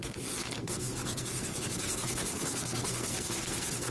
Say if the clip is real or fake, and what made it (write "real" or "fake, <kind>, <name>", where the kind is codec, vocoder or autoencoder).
fake, codec, SNAC